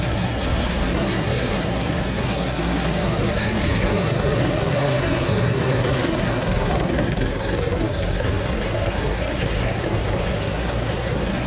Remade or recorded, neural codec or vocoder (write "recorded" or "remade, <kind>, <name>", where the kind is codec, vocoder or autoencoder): remade, codec, SNAC